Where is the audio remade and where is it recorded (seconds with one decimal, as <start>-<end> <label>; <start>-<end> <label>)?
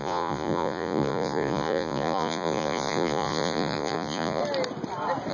0.0-4.4 remade; 4.4-5.3 recorded